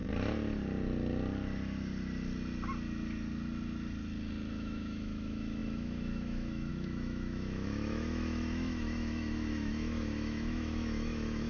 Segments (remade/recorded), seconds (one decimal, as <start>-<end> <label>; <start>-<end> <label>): 0.0-4.5 recorded; 4.5-11.5 remade